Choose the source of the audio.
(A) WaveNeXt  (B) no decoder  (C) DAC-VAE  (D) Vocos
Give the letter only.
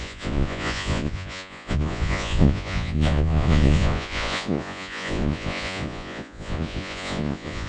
D